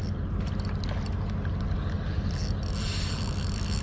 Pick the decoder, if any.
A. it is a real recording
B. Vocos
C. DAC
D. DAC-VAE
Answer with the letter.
A